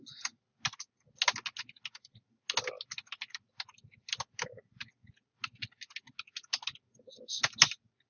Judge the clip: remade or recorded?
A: recorded